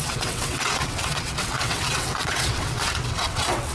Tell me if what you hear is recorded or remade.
remade